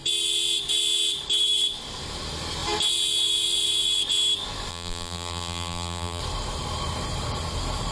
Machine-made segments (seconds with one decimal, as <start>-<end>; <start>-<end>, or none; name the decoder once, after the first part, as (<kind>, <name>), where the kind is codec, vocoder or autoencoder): 4.7-6.2 (vocoder, BigVGAN v2)